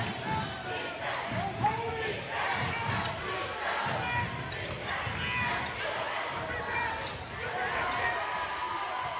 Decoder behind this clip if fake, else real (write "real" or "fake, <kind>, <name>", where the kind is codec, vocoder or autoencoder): real